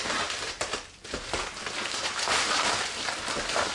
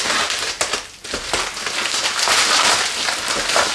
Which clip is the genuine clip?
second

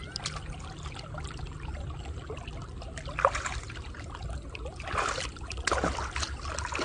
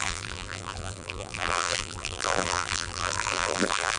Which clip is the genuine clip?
first